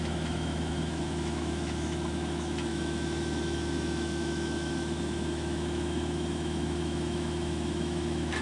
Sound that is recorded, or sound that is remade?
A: remade